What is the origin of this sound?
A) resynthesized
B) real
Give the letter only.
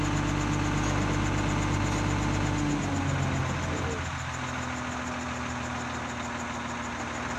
B